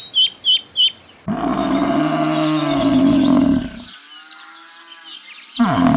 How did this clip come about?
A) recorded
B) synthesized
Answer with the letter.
A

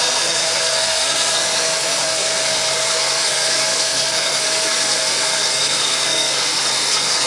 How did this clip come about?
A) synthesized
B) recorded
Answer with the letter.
A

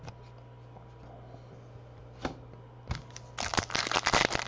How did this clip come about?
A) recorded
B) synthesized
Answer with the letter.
A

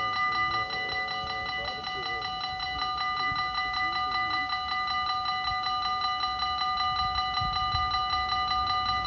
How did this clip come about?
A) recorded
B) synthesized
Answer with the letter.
A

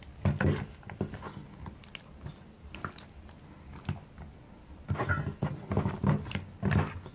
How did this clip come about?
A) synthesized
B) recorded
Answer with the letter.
B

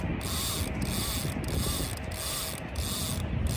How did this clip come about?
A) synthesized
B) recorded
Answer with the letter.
B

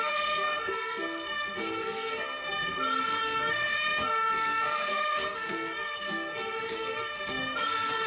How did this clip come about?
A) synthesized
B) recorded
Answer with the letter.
A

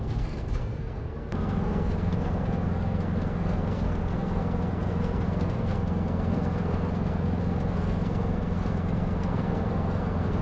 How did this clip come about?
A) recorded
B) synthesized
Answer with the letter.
B